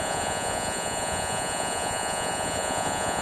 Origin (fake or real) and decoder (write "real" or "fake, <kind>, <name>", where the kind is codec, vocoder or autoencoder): fake, vocoder, Vocos